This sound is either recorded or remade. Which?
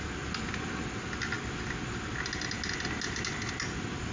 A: recorded